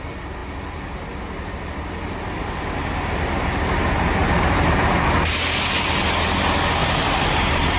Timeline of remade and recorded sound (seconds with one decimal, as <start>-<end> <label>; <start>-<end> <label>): 0.0-4.2 recorded; 4.2-4.8 remade; 4.8-6.8 recorded; 6.8-7.8 remade